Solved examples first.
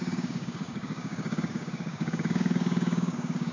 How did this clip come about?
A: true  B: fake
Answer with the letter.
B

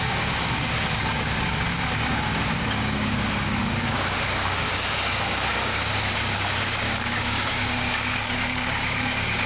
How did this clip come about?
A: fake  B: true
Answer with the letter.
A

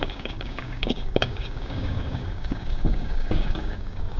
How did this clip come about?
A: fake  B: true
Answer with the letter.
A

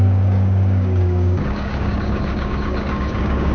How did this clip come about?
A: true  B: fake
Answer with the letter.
B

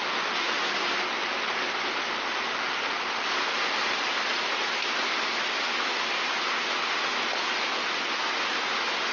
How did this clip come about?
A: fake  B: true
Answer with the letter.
B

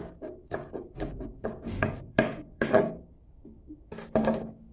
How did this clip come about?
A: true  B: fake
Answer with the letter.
B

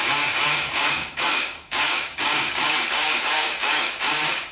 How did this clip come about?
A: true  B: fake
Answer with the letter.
B